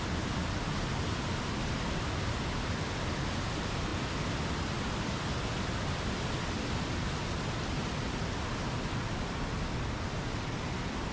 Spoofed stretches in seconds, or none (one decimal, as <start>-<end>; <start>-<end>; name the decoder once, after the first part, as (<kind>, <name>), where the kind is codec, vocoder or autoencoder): none